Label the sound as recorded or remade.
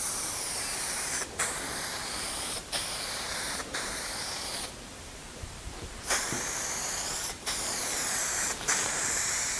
remade